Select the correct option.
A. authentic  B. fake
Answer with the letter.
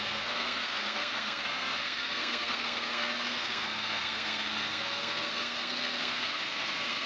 B